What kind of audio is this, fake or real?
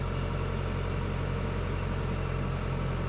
real